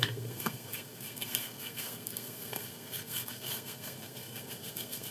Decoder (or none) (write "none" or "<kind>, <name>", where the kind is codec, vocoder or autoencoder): codec, SNAC